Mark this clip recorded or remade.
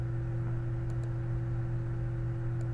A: recorded